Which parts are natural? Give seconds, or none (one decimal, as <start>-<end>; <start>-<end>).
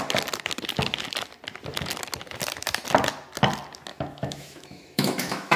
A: 0.0-3.9